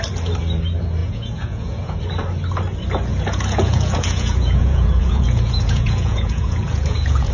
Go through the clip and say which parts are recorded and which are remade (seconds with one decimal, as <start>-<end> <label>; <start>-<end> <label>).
0.0-1.0 recorded; 1.0-2.0 remade; 2.0-3.1 recorded; 3.1-7.3 remade